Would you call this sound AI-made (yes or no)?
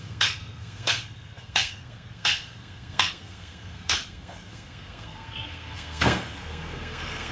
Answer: yes